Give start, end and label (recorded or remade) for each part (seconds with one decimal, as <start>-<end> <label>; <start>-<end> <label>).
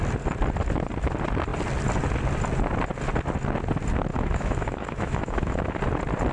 0.0-4.1 recorded; 4.1-5.8 remade; 5.8-6.3 recorded